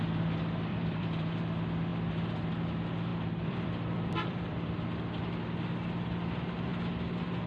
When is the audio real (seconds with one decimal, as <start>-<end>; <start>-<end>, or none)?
0.0-0.7; 1.3-3.1; 5.2-7.5